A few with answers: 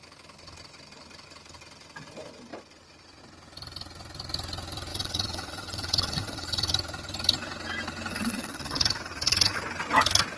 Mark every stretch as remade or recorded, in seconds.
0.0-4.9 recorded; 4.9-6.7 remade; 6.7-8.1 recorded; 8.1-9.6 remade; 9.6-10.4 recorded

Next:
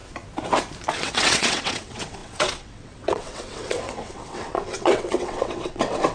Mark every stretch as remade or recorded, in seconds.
0.0-0.9 recorded; 0.9-6.1 remade